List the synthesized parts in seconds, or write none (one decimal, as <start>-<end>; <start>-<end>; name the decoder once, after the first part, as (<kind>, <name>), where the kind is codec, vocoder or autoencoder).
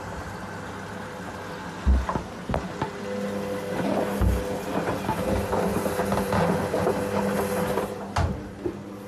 6.1-6.9 (vocoder, BigVGAN v2)